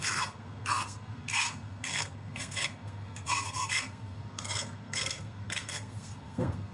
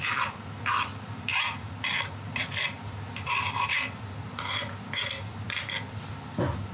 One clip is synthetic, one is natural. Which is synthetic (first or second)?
first